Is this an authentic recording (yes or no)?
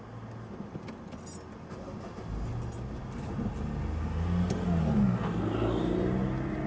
yes